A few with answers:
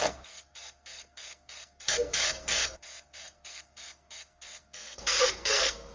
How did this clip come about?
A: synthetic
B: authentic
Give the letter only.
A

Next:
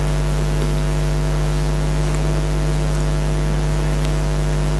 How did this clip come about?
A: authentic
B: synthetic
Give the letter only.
A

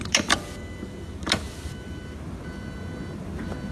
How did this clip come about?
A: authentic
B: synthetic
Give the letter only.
A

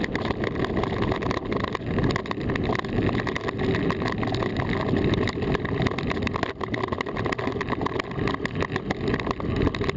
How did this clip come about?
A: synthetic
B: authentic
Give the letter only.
B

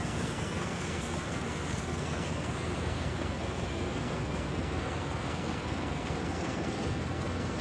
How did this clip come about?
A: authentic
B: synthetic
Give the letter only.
B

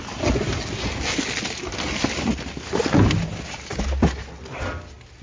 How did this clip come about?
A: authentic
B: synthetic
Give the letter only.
A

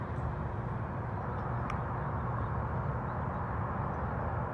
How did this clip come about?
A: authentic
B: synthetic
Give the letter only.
A